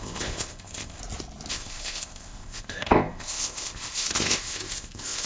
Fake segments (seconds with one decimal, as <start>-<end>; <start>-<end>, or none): 0.0-1.0; 1.5-5.3